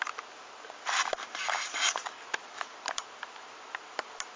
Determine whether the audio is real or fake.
real